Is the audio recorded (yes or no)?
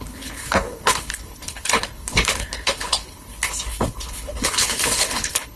no